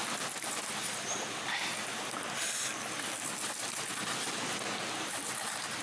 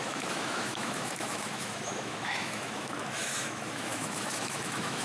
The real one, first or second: first